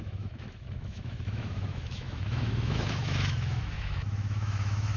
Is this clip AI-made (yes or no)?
yes